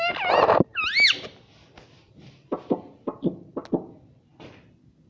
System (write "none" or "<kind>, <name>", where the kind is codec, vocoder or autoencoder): none